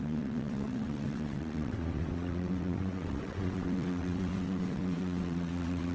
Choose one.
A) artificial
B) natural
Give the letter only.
A